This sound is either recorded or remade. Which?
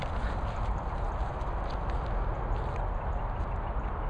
recorded